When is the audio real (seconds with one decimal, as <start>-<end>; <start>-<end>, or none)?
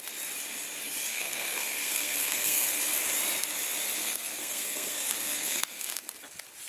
0.0-1.1; 2.8-4.0; 6.0-6.7